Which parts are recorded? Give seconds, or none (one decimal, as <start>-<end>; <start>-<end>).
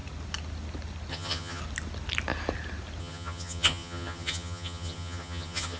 0.0-1.1; 1.6-3.0